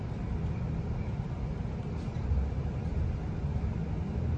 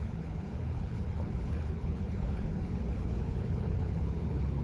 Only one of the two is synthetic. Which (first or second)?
second